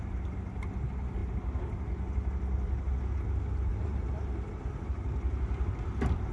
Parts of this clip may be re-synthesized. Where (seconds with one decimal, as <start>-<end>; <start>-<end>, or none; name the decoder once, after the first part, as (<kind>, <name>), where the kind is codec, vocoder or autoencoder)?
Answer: 3.7-4.5 (vocoder, BigVGAN v2)